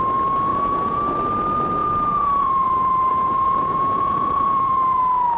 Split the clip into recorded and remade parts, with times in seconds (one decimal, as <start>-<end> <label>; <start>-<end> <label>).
0.0-0.5 recorded; 0.5-1.0 remade; 1.0-1.8 recorded; 1.8-5.0 remade; 5.0-5.4 recorded